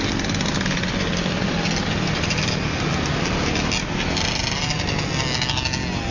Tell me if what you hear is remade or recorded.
recorded